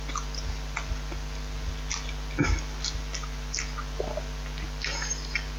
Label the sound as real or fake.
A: real